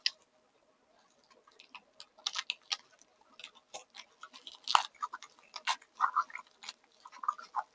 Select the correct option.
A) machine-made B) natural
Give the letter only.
B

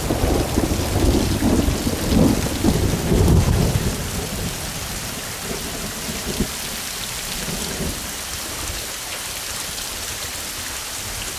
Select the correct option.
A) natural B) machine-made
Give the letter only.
A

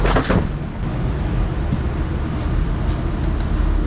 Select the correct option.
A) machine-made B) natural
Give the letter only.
B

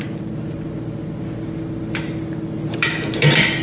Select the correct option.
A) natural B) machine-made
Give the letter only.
A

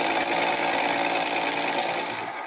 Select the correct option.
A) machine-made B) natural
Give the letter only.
B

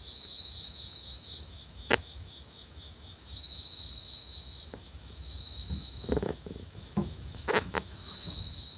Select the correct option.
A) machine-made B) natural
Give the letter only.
A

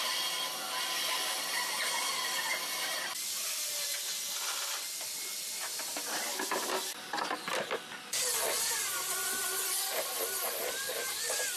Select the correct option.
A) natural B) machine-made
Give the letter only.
A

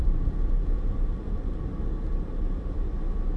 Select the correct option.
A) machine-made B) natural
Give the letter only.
B